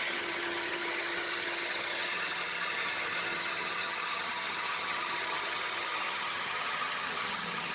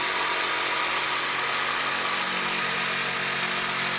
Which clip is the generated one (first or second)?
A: first